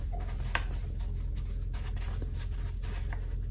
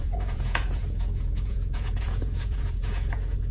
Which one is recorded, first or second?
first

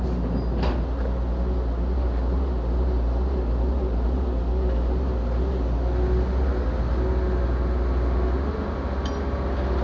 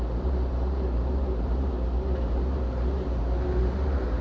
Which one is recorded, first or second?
first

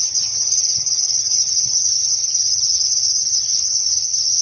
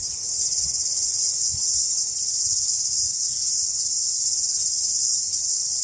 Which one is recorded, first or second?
second